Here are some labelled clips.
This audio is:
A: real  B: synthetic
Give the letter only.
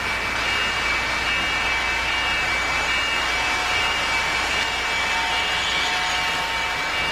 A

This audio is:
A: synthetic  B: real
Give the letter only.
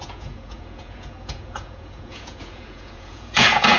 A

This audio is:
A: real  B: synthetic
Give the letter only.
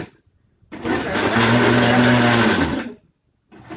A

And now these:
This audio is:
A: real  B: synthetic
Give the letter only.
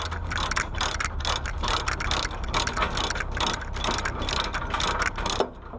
A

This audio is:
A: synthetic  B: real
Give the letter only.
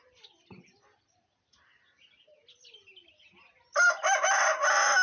B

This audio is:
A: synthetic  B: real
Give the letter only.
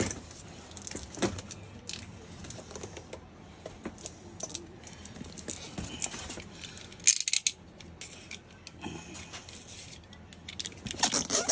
B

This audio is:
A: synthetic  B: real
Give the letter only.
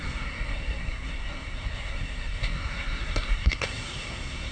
A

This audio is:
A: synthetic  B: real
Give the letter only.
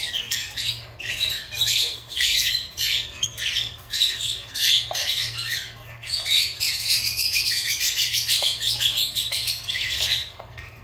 A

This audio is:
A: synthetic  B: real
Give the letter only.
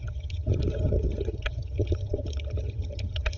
A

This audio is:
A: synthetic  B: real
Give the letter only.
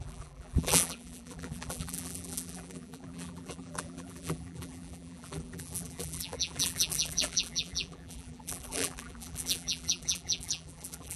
A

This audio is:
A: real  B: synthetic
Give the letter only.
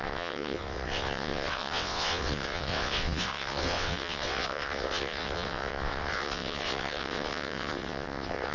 B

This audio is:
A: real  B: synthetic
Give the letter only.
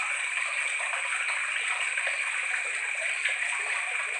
A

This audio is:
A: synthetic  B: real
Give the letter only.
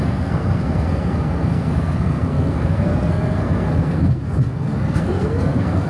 A